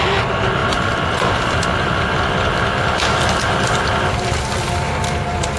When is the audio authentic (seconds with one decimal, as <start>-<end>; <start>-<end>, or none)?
none